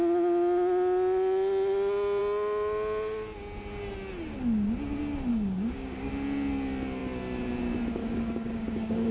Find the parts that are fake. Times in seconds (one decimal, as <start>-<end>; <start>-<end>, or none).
5.3-6.1; 8.0-9.1